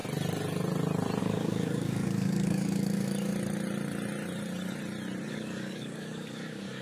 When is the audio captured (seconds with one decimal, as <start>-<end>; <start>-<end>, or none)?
0.0-1.2; 3.3-5.3